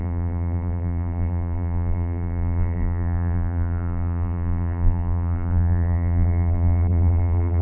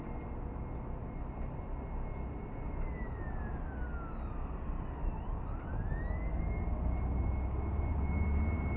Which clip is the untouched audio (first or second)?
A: second